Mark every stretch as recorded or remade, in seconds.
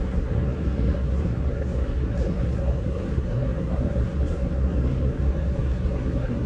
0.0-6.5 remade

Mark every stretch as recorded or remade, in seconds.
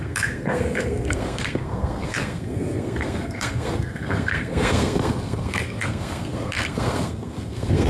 0.0-7.9 remade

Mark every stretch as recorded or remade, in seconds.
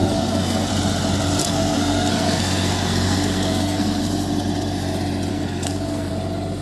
0.0-0.7 remade; 0.7-1.4 recorded; 1.4-4.0 remade; 4.0-5.3 recorded; 5.3-6.1 remade; 6.1-6.6 recorded